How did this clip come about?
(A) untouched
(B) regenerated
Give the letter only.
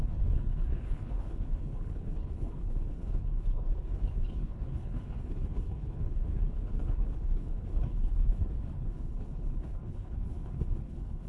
B